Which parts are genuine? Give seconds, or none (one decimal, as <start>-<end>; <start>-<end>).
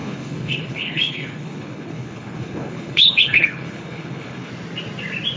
4.5-5.4